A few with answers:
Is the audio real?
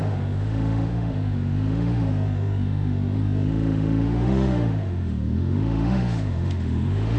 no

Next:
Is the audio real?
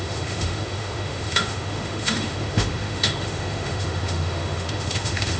no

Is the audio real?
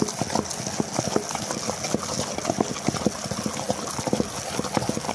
yes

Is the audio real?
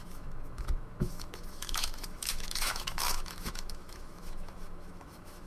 no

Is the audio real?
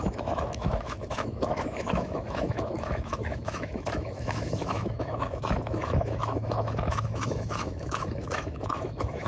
no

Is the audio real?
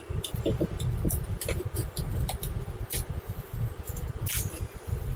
yes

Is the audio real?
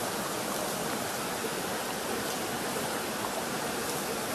yes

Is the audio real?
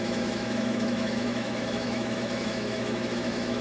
no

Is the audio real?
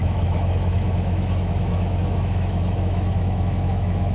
no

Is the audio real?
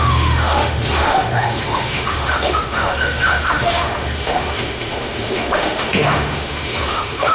no